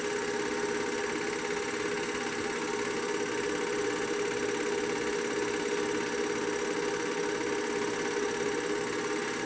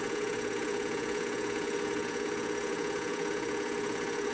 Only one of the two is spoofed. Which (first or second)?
second